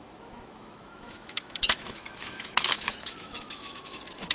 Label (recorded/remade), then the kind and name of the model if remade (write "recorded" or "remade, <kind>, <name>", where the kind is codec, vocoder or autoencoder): remade, autoencoder, DAC-VAE